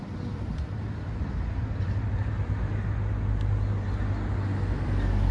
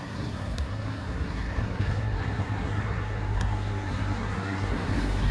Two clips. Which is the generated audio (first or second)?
second